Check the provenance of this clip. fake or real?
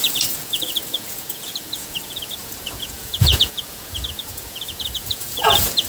fake